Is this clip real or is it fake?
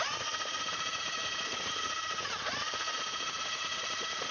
fake